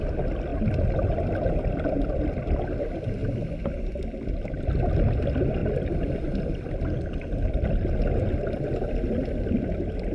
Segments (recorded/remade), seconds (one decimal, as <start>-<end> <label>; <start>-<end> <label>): 0.0-10.1 recorded